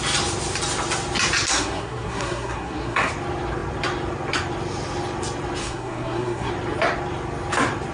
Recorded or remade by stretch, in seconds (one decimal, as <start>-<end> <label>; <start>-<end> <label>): 0.0-1.5 recorded; 1.5-3.1 remade; 3.1-5.6 recorded; 5.6-6.5 remade; 6.5-7.9 recorded

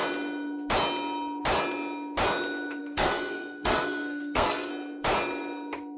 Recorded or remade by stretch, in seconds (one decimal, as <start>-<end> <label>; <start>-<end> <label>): 0.0-2.8 recorded; 2.8-4.7 remade; 4.7-6.0 recorded

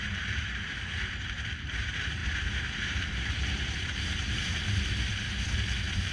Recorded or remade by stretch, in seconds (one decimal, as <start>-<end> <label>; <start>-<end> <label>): 0.0-4.5 remade; 4.5-5.1 recorded; 5.1-6.1 remade